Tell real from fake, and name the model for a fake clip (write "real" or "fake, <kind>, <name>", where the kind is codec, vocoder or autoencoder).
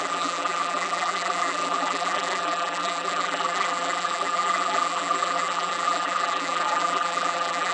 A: fake, vocoder, BigVGAN v2